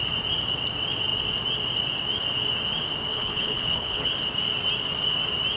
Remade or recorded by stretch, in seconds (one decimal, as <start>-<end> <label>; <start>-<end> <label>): 0.0-3.1 recorded; 3.1-4.1 remade; 4.1-5.6 recorded